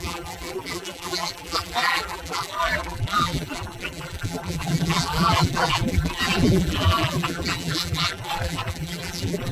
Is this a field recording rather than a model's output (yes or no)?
no